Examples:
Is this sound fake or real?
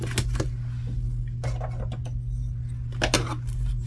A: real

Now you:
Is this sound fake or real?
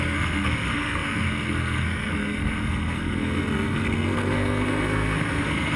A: fake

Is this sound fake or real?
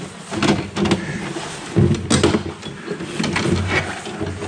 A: real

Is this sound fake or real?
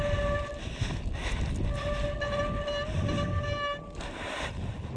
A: real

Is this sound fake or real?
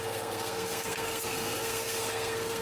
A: fake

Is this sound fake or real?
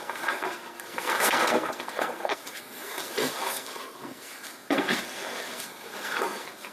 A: fake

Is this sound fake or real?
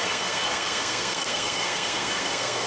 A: fake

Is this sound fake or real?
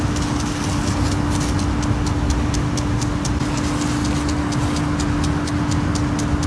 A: real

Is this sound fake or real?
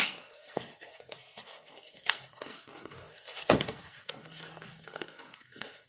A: fake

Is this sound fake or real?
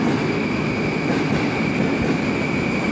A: real